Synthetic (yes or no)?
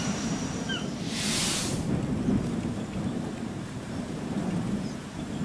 yes